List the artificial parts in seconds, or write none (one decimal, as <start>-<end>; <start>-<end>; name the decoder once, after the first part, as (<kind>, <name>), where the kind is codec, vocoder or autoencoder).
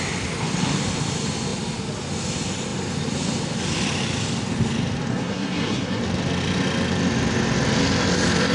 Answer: 5.1-6.0 (codec, SNAC)